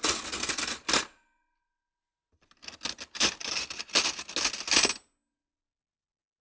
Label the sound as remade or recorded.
recorded